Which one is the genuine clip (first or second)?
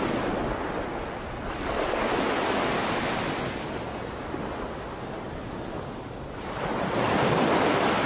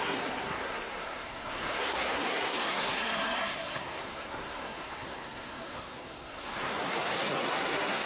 first